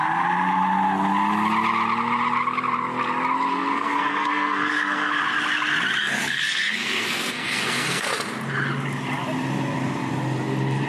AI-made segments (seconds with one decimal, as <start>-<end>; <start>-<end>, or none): 3.5-5.2; 6.0-8.1